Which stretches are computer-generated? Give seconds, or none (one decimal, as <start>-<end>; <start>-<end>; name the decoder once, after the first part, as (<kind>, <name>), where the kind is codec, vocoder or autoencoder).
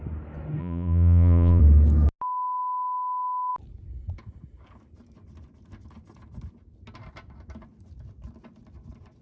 0.6-1.6 (vocoder, Vocos)